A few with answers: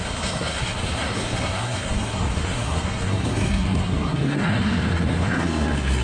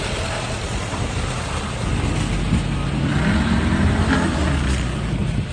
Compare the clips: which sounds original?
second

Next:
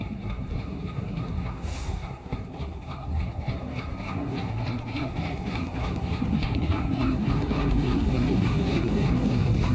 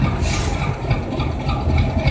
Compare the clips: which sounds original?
second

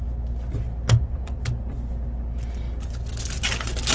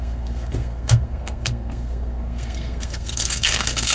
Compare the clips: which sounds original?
first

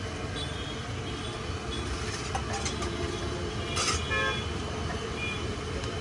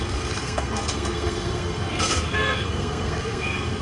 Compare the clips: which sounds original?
first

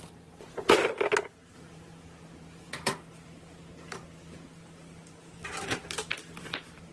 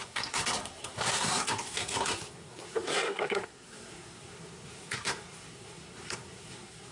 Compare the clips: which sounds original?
first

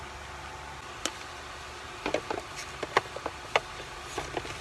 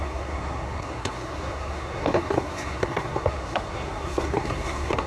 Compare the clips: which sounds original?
first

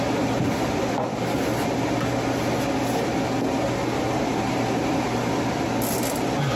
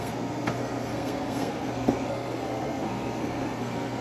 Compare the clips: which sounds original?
first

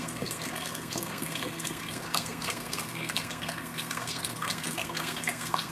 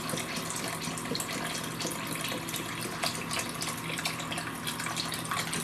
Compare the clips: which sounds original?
second